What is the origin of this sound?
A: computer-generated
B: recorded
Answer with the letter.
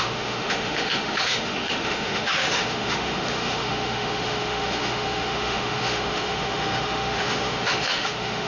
A